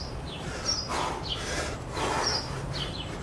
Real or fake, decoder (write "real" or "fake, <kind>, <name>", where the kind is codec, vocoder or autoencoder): real